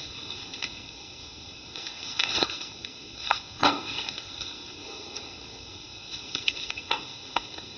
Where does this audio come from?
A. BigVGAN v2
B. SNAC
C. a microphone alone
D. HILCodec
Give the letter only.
B